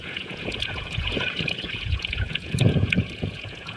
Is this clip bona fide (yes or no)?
no